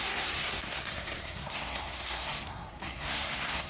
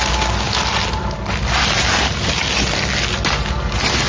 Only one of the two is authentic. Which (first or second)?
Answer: second